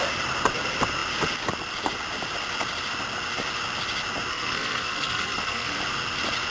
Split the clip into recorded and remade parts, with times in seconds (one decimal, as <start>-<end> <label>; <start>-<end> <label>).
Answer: 0.0-4.3 recorded; 4.3-5.8 remade; 5.8-6.5 recorded